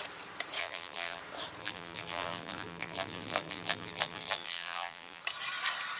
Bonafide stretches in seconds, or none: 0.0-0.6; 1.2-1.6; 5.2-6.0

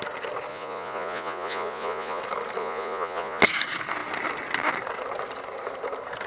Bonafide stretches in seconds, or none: 0.0-0.5; 2.2-2.6; 3.4-6.3

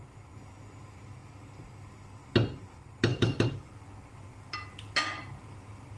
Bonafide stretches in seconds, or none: 0.0-3.1; 3.7-6.0

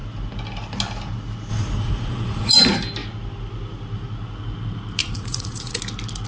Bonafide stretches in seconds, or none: 0.0-1.5; 2.5-5.0; 5.8-6.3

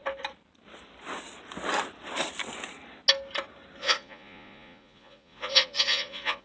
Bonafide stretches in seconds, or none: 0.0-3.8

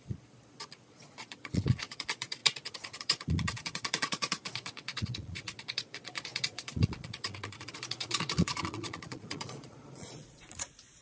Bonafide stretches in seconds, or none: 2.4-3.0